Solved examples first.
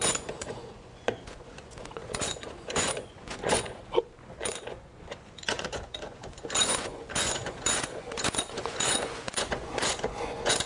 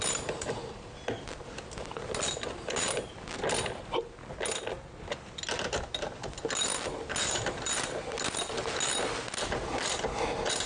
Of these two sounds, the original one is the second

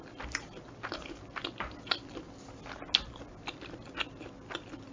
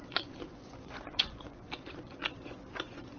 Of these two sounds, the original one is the first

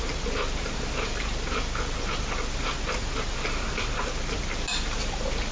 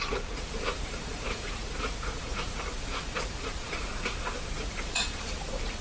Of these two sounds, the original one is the first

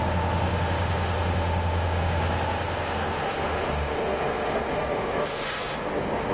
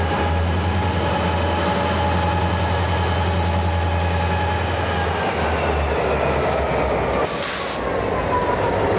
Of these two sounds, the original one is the second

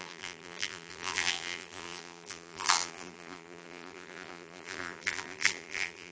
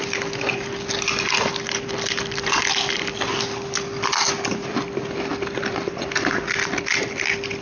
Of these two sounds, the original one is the second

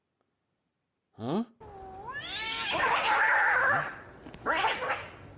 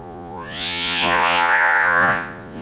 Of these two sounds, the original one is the first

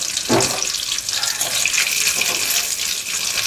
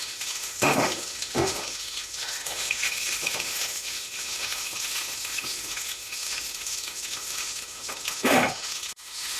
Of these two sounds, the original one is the first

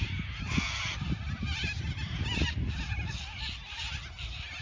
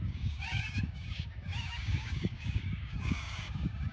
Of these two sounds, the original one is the first